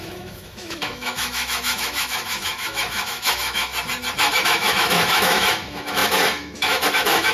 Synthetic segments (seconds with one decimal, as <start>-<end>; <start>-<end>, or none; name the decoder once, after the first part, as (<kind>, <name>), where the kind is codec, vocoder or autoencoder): 0.0-3.7 (autoencoder, DAC-VAE); 4.3-7.3